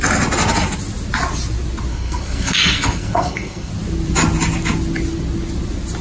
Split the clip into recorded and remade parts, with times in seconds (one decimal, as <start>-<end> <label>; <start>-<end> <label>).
0.0-1.9 recorded; 1.9-3.7 remade; 3.7-6.0 recorded